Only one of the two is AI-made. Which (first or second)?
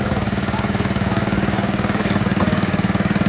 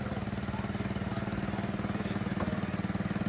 first